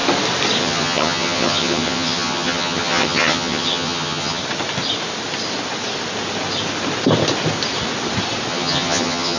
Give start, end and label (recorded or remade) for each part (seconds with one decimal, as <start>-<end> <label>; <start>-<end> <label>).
0.0-0.6 recorded; 0.6-4.4 remade; 4.4-8.5 recorded; 8.5-9.4 remade